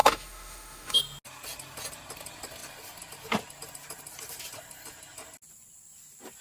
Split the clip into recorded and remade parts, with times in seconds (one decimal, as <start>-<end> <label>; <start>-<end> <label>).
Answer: 0.0-1.0 remade; 1.0-6.4 recorded